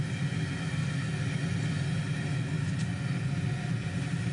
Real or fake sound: real